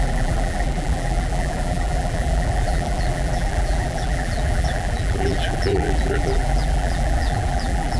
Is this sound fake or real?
fake